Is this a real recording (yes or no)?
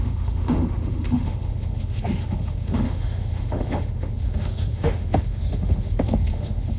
no